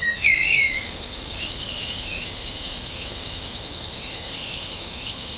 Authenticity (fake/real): fake